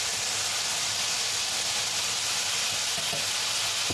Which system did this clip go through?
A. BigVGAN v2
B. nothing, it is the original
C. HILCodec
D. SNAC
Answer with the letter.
B